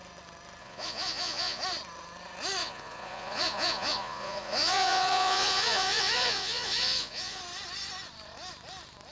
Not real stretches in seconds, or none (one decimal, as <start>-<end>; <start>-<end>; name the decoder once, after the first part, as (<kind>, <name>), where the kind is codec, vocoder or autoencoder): 0.6-1.6 (vocoder, Vocos); 2.6-7.4